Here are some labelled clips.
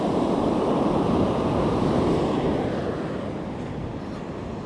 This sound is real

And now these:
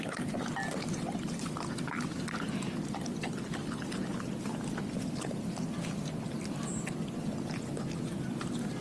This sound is real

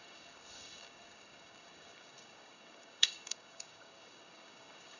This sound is fake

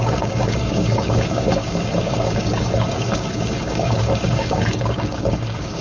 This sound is fake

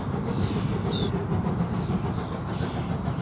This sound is real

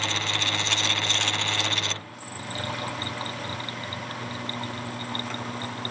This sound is real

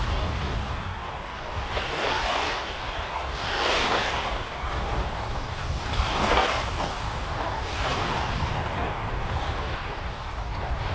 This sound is fake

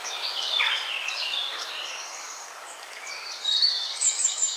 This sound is fake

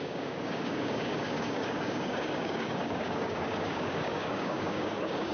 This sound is fake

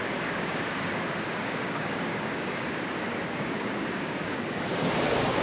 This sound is fake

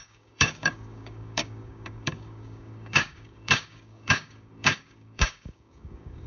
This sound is fake